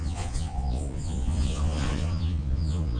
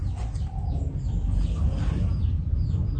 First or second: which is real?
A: second